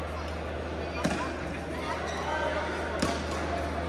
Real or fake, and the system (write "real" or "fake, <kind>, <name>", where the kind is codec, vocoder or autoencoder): real